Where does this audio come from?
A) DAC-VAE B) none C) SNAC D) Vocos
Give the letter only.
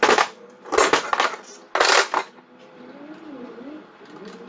B